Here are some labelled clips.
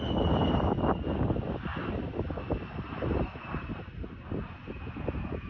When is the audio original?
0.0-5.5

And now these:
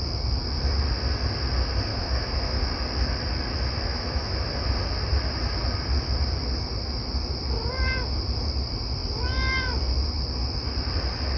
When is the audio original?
0.0-1.9; 2.6-3.9; 4.6-11.4

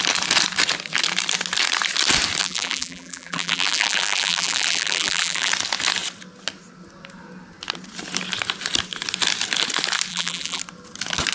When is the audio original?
0.0-2.4; 5.5-10.1; 10.6-11.3

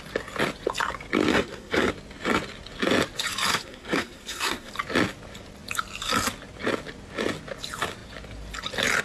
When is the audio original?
0.0-1.3; 1.9-3.5; 4.7-9.0

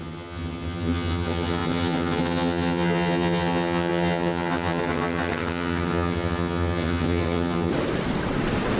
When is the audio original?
7.7-8.8

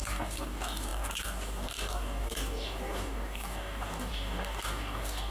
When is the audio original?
none

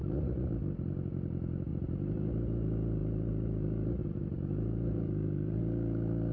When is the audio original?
0.5-1.7; 2.3-3.0; 5.6-6.3